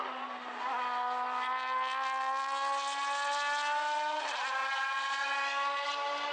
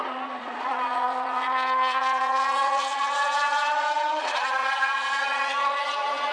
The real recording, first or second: first